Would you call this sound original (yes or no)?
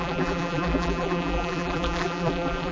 no